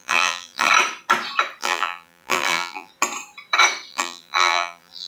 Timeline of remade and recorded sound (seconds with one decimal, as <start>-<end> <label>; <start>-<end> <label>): 0.0-0.7 remade; 0.7-1.6 recorded; 1.6-2.9 remade; 2.9-3.9 recorded; 3.9-5.1 remade